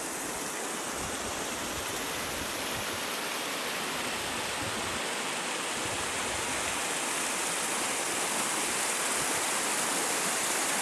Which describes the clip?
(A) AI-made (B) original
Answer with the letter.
B